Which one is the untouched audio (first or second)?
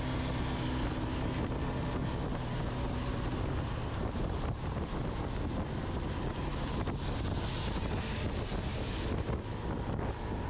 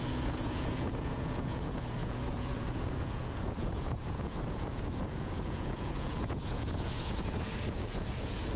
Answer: first